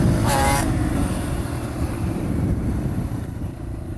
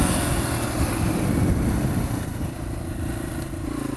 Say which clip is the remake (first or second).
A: first